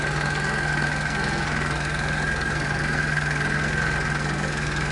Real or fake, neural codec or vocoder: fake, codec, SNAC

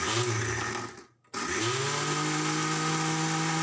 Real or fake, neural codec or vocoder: real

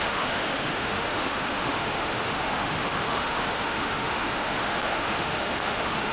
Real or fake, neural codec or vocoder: fake, autoencoder, DAC-VAE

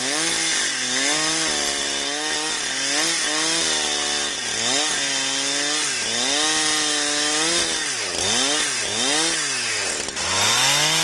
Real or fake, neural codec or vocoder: real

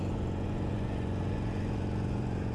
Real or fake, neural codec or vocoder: fake, vocoder, Vocos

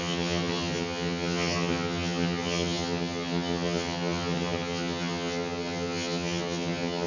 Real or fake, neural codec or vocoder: fake, vocoder, HiFi-GAN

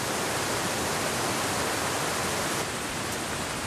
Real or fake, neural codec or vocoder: real